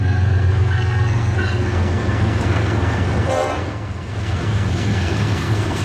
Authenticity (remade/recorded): remade